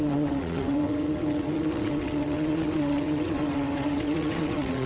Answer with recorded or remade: remade